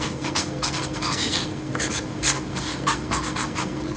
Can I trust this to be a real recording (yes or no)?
no